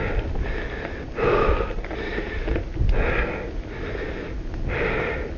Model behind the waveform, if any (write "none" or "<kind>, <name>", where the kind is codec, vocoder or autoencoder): none